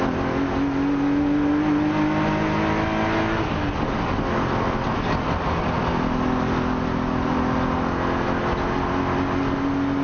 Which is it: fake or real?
real